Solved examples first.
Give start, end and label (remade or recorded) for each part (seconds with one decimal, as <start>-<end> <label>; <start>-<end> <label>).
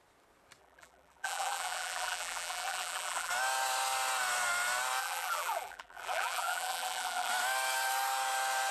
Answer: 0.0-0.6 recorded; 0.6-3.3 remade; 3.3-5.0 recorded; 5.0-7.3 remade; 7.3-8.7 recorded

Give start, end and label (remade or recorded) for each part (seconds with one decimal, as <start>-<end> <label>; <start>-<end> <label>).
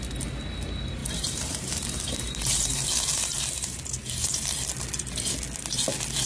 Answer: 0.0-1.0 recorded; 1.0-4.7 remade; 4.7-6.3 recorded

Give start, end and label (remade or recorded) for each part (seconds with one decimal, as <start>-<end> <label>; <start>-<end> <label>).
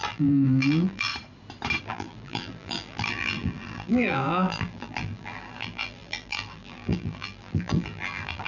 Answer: 0.0-1.1 remade; 1.1-1.8 recorded; 1.8-8.5 remade